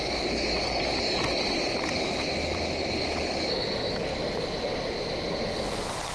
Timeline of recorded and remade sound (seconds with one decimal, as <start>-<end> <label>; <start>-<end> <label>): 0.0-0.8 remade; 0.8-2.4 recorded; 2.4-3.7 remade; 3.7-6.1 recorded